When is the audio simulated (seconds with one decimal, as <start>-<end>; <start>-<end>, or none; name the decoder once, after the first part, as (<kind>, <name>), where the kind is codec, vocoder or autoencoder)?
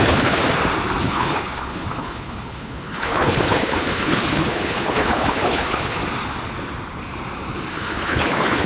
0.0-0.4 (codec, HILCodec); 1.0-6.0; 7.7-8.7